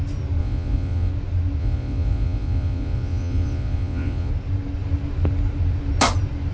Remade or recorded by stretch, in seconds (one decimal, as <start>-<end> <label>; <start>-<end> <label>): 0.0-0.4 recorded; 0.4-1.1 remade; 1.1-1.6 recorded; 1.6-4.3 remade; 4.3-6.5 recorded